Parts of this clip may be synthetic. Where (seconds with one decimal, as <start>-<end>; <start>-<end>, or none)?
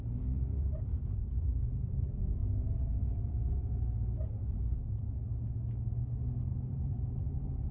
6.5-7.3